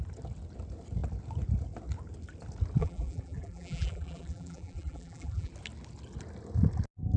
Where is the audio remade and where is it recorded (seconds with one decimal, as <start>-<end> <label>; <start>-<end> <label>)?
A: 0.0-2.8 recorded; 2.8-5.5 remade; 5.5-7.2 recorded